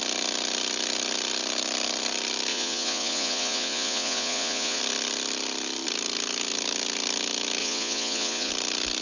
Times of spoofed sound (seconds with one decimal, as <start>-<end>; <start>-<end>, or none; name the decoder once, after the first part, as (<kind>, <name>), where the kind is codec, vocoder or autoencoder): 2.5-4.8 (vocoder, Vocos); 7.6-8.5